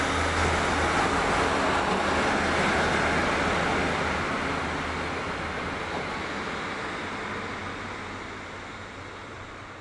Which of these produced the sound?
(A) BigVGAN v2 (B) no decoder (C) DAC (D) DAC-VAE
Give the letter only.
B